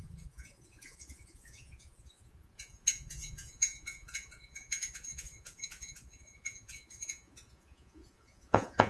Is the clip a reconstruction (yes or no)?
yes